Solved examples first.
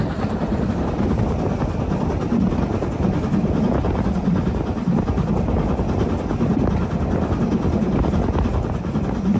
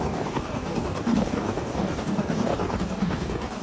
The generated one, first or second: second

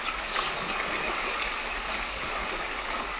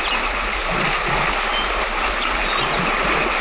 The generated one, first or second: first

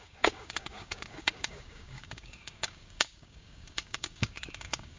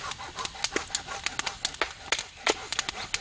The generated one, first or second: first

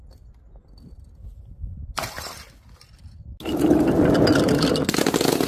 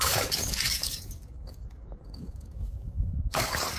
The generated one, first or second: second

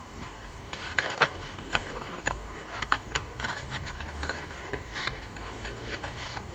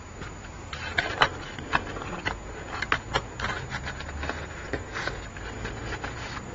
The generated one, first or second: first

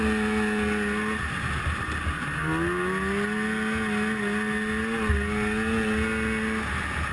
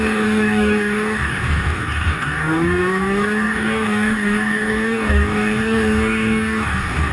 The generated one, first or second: second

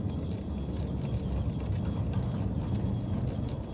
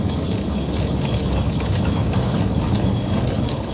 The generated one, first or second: second